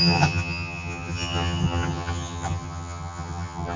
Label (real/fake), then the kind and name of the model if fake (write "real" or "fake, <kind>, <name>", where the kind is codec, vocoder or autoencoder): fake, vocoder, HiFi-GAN